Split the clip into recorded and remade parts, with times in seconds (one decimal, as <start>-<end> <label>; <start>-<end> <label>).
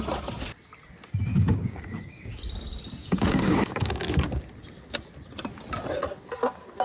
0.0-1.3 recorded; 1.3-2.4 remade; 2.4-3.0 recorded; 3.0-4.4 remade; 4.4-6.8 recorded